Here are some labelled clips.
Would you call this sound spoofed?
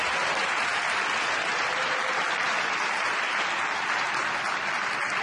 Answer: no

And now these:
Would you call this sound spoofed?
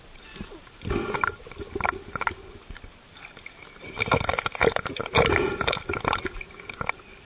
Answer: no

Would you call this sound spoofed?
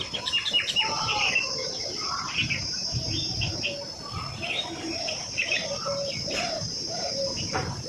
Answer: no